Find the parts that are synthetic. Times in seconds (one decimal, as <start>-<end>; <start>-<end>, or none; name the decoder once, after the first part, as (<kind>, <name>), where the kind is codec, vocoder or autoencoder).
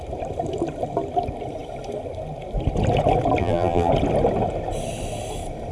3.4-3.9 (vocoder, BigVGAN v2)